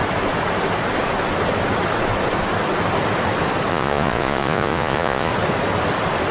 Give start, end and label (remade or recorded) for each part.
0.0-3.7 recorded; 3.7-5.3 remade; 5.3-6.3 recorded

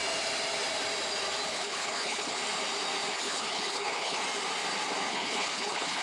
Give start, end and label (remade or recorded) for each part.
0.0-1.5 recorded; 1.5-2.4 remade; 2.4-3.1 recorded; 3.1-4.2 remade; 4.2-5.1 recorded; 5.1-6.0 remade

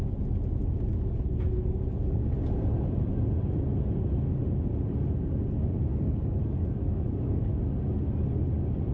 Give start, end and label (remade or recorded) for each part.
0.0-0.9 recorded; 0.9-2.3 remade; 2.3-5.9 recorded; 5.9-7.5 remade; 7.5-8.9 recorded

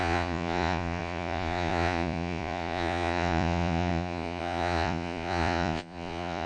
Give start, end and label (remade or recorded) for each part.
0.0-6.5 remade

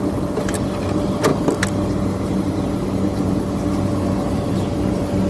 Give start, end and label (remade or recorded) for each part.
0.0-5.3 recorded

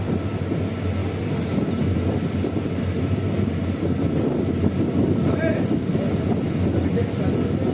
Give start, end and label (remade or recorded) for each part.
0.0-7.7 recorded

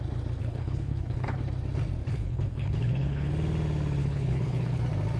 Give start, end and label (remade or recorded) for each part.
0.0-0.4 recorded; 0.4-1.4 remade; 1.4-2.1 recorded; 2.1-3.3 remade; 3.3-4.0 recorded; 4.0-4.8 remade; 4.8-5.2 recorded

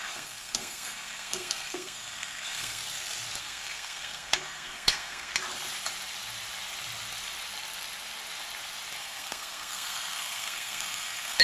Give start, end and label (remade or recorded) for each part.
0.0-2.8 remade; 2.8-3.4 recorded; 3.4-5.3 remade; 5.3-9.0 recorded; 9.0-11.4 remade